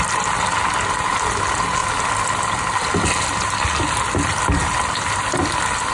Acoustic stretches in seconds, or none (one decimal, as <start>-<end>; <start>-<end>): 0.0-5.9